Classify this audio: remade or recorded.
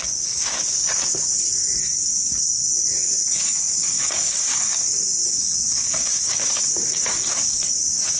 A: remade